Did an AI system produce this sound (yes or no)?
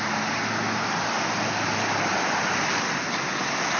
no